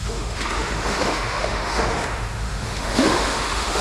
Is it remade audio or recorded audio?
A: remade